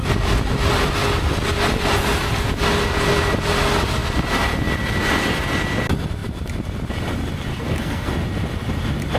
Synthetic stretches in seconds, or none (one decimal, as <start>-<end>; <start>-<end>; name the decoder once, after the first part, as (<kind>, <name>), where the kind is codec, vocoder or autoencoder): 7.5-8.1 (codec, SNAC)